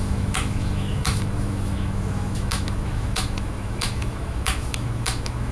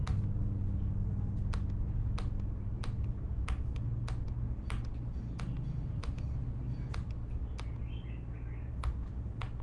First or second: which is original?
second